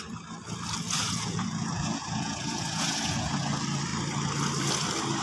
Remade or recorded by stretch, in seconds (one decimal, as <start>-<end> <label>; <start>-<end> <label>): 0.0-1.0 recorded; 1.0-3.4 remade; 3.4-5.2 recorded